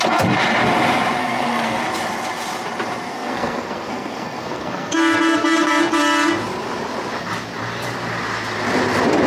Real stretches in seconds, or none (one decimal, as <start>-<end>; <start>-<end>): 0.0-1.2; 1.8-3.1; 5.7-9.3